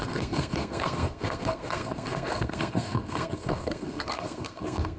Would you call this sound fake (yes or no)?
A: yes